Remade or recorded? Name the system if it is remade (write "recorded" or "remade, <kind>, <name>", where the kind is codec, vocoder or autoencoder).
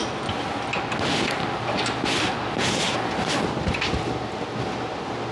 recorded